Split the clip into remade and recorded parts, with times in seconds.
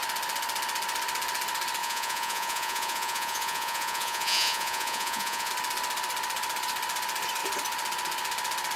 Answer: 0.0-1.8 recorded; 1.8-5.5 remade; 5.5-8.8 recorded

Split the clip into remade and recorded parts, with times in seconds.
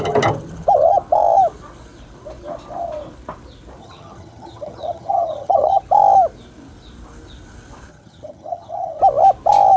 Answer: 0.0-3.8 recorded; 3.8-5.8 remade; 5.8-7.9 recorded; 7.9-9.0 remade; 9.0-9.8 recorded